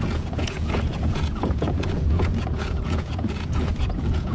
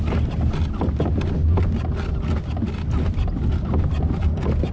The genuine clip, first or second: second